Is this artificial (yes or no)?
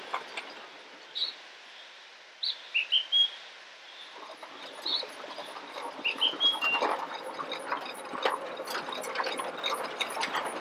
no